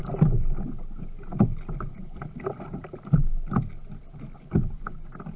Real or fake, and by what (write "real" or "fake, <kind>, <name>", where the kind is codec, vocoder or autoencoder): real